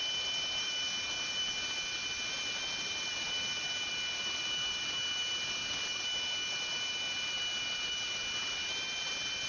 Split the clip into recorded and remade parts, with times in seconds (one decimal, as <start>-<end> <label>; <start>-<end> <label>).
0.0-9.5 recorded